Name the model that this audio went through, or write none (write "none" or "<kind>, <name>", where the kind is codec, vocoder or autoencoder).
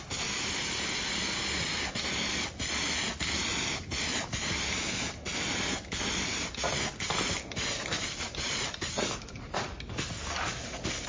none